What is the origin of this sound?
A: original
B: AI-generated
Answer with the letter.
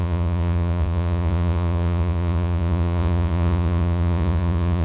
B